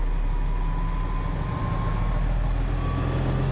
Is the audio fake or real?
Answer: real